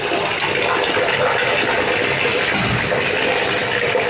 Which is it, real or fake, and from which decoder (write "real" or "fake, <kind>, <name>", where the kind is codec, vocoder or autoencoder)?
real